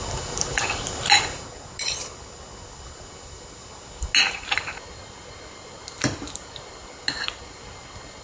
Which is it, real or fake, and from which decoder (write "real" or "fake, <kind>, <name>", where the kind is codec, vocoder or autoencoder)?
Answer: real